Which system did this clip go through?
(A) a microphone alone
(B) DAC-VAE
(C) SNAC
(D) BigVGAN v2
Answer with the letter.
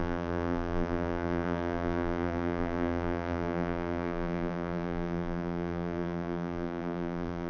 D